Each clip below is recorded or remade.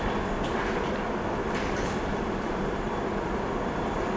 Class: remade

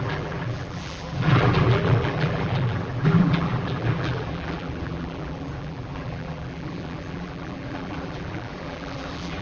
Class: remade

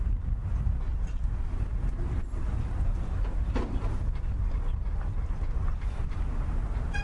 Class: recorded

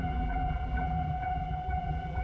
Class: remade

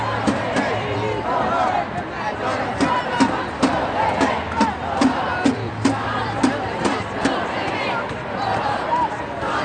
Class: remade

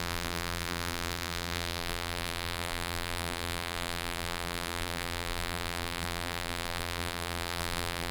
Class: remade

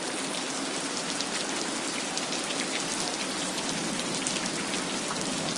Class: recorded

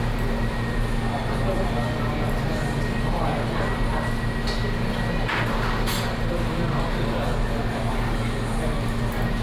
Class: recorded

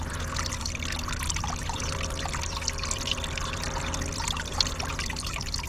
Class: remade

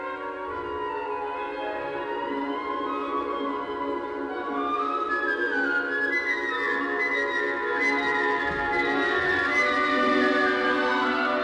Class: recorded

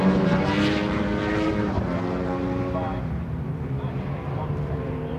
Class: remade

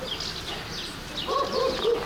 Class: recorded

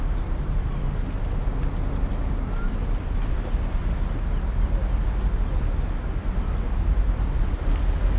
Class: recorded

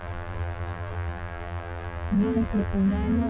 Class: remade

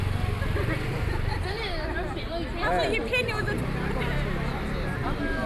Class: recorded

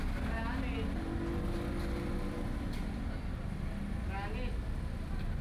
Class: recorded